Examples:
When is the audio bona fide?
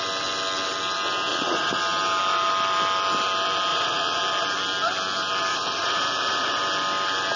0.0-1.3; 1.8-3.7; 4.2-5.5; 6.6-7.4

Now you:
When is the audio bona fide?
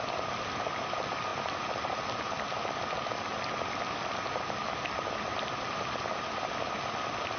0.0-7.4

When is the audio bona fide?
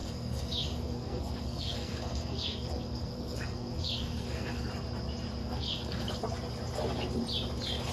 4.7-5.4; 6.1-7.9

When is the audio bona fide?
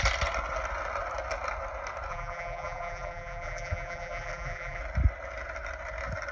0.0-2.1; 4.8-6.3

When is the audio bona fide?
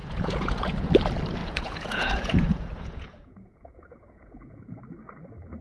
0.9-1.4; 4.8-5.6